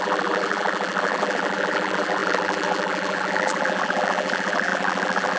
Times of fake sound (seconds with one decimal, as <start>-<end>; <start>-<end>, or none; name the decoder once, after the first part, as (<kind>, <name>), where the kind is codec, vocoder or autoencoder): 0.0-5.4 (vocoder, BigVGAN v2)